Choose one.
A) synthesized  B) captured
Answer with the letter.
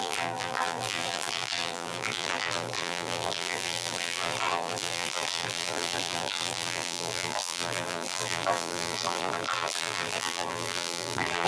A